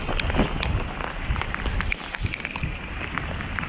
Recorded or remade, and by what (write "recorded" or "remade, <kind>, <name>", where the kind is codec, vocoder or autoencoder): recorded